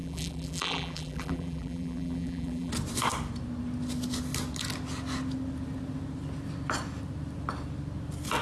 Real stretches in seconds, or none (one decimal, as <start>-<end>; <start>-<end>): 2.7-8.4